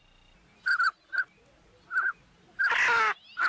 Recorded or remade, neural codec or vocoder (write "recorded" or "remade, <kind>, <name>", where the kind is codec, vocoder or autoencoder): recorded